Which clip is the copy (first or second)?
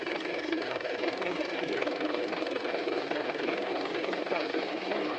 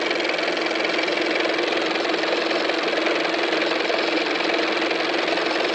first